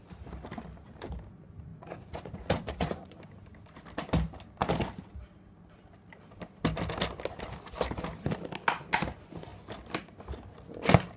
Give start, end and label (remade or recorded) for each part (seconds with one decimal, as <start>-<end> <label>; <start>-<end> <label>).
0.0-1.7 recorded; 1.7-3.2 remade; 3.2-11.2 recorded